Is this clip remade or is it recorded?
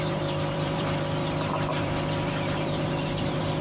remade